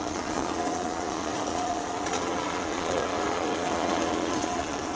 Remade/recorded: remade